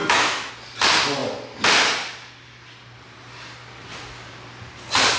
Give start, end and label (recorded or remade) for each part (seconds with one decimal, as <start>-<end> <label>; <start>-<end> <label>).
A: 0.0-0.5 remade; 0.5-5.2 recorded